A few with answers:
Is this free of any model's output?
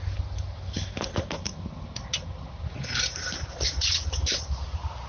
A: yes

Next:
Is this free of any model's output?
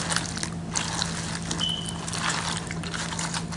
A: yes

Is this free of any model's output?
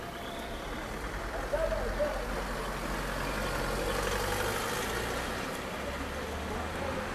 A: yes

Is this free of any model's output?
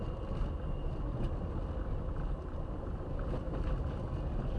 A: yes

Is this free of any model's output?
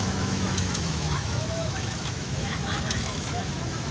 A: no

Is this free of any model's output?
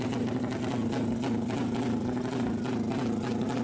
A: yes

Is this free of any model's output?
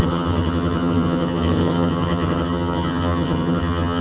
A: no